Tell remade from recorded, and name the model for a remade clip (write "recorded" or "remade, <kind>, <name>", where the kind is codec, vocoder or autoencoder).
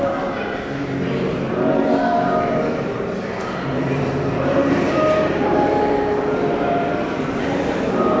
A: remade, vocoder, BigVGAN v2